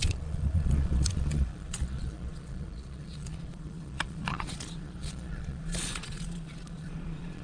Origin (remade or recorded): remade